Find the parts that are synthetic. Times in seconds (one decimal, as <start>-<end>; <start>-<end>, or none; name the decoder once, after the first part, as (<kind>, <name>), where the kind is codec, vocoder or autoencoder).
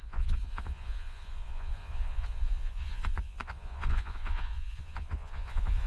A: 0.0-5.9 (vocoder, Vocos)